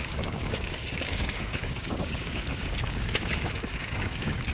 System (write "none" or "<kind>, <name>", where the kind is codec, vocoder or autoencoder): codec, DAC